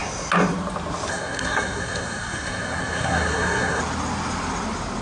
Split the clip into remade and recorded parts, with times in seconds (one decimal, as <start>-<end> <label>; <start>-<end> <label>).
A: 0.0-1.1 recorded; 1.1-3.8 remade; 3.8-5.0 recorded